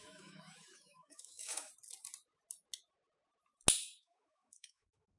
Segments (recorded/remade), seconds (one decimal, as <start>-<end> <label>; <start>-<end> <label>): 0.0-1.7 remade; 1.7-3.8 recorded; 3.8-5.2 remade